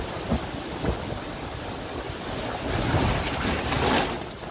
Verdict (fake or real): real